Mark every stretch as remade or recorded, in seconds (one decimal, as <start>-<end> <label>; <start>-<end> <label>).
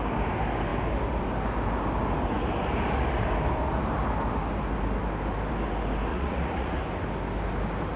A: 0.0-6.1 recorded; 6.1-6.8 remade; 6.8-8.0 recorded